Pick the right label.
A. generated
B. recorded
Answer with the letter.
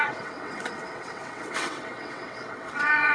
A